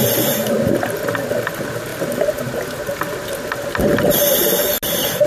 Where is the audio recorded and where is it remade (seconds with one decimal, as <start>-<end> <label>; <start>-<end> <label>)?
0.0-5.3 recorded